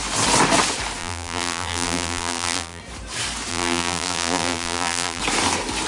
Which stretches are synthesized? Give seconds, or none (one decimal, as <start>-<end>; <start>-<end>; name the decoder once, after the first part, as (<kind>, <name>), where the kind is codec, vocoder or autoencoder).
1.0-2.8 (vocoder, BigVGAN v2); 3.5-5.2